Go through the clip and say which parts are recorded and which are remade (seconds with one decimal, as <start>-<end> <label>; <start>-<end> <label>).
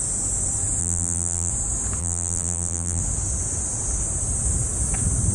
0.0-0.8 recorded; 0.8-1.5 remade; 1.5-2.0 recorded; 2.0-3.0 remade; 3.0-5.3 recorded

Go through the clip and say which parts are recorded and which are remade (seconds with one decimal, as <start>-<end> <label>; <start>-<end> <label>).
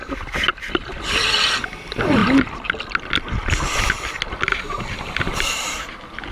0.0-6.3 recorded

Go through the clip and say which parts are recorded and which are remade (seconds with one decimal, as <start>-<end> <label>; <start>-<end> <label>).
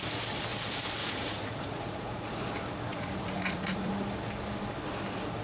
0.0-1.0 recorded; 1.0-2.5 remade; 2.5-2.9 recorded; 2.9-3.9 remade; 3.9-5.4 recorded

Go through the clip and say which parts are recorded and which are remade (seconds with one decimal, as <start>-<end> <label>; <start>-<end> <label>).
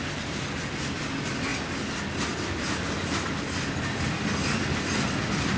0.0-5.6 recorded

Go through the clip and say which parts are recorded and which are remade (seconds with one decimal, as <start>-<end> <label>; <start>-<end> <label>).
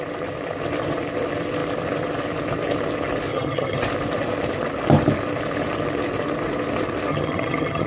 0.0-3.3 recorded; 3.3-3.8 remade; 3.8-7.1 recorded; 7.1-7.9 remade